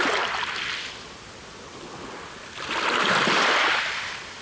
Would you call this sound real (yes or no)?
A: yes